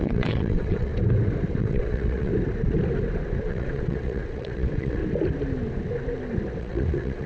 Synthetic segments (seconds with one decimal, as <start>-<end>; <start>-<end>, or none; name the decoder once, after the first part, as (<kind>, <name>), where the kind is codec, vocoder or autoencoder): 0.0-0.9 (vocoder, WaveNeXt); 1.6-2.3; 3.5-5.0; 6.6-7.3